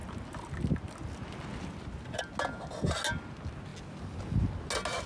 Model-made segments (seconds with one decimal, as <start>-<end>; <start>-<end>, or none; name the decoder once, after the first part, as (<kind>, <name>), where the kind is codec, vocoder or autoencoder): none